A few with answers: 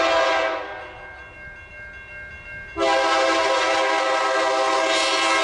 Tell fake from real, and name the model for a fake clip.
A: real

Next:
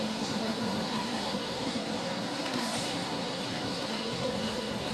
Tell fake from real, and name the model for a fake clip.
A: fake, codec, SNAC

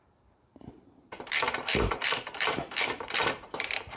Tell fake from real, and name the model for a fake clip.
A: fake, vocoder, BigVGAN v2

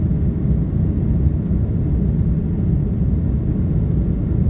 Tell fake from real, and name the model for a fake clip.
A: real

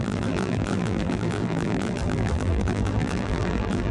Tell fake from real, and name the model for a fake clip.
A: fake, vocoder, BigVGAN v2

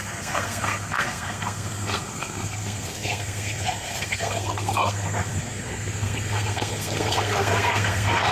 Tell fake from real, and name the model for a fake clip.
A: fake, codec, SNAC